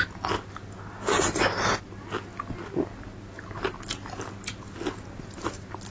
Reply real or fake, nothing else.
real